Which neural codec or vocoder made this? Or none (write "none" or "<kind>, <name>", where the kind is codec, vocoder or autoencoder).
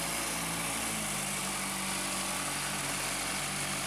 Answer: none